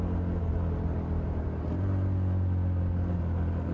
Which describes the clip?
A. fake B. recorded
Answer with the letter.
B